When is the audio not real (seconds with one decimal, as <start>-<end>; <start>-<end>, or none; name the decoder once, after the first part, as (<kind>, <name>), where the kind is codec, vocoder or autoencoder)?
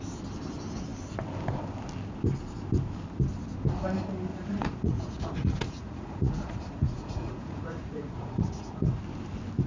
4.3-9.0 (vocoder, Vocos)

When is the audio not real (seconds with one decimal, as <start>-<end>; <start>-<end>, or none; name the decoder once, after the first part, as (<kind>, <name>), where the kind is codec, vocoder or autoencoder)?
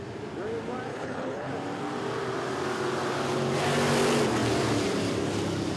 0.9-1.5 (codec, HILCodec)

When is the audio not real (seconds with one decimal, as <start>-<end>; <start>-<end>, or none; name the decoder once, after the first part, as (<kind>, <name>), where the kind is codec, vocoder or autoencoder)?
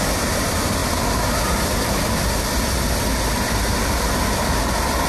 none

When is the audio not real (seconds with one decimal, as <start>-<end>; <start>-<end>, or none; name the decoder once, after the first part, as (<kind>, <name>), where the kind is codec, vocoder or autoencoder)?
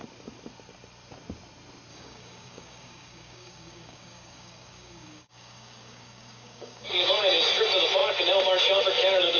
1.9-7.1 (codec, DAC)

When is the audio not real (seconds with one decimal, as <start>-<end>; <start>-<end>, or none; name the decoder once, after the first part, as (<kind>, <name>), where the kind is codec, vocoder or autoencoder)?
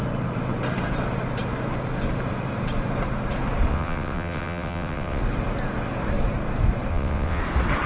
3.7-5.2 (vocoder, WaveNeXt); 6.9-7.4